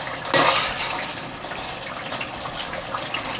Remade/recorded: recorded